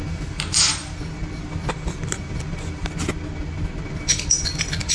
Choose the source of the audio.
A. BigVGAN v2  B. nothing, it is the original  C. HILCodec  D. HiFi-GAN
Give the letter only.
B